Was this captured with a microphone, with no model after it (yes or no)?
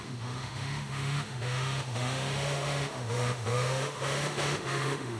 no